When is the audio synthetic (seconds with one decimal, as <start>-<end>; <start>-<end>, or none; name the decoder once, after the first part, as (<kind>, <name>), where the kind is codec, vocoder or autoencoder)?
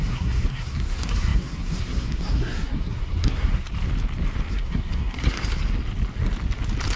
0.0-3.7 (codec, SNAC); 4.5-5.4